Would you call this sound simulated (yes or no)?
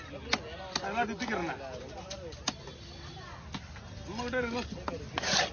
no